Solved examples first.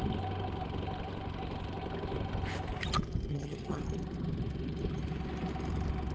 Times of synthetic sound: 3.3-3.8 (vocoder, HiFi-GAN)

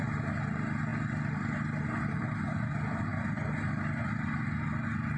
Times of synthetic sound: none

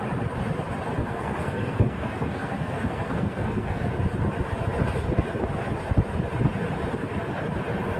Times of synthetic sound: 1.0-3.9 (codec, SNAC)